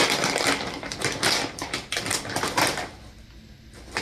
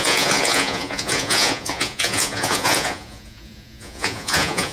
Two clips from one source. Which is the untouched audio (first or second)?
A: first